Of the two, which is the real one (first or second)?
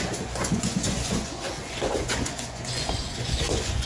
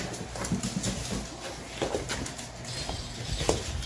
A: second